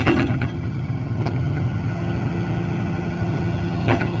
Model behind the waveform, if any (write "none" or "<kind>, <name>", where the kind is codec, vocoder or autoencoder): vocoder, HiFi-GAN